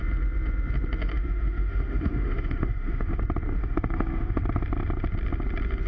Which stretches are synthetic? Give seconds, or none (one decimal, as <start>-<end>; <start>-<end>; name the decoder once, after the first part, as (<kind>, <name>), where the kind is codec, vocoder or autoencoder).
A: 1.1-3.2 (autoencoder, DAC-VAE); 3.6-4.4